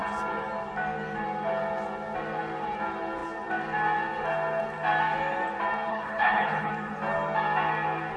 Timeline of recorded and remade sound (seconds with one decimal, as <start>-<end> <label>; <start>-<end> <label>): 0.0-5.9 recorded; 5.9-6.7 remade; 6.7-8.2 recorded